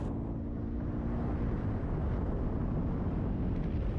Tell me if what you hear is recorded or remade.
recorded